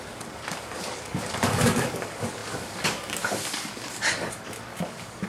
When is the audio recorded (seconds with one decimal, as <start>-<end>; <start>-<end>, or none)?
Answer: none